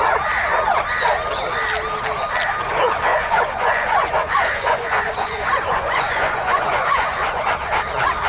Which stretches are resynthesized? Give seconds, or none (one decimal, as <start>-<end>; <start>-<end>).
3.1-7.4